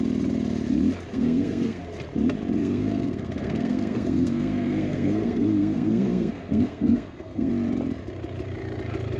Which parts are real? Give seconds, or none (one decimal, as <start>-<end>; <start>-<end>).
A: 0.0-1.1; 1.8-2.6; 7.5-9.2